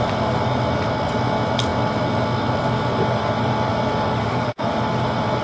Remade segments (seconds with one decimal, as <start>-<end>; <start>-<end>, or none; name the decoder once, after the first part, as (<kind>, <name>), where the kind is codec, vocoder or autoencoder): 4.2-4.7 (autoencoder, DAC-VAE)